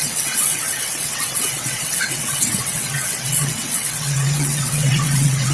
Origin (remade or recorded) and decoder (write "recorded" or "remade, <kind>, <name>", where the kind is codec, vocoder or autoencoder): remade, vocoder, WaveNeXt